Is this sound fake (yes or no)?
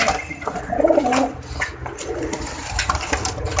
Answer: yes